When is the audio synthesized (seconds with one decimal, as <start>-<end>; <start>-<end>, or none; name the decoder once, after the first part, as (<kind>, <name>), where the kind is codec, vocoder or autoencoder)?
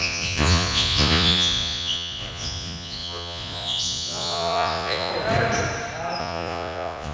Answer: 0.0-5.1 (vocoder, Vocos); 6.2-7.1